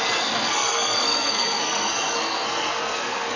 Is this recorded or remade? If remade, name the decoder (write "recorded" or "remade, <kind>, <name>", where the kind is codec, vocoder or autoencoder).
remade, codec, SNAC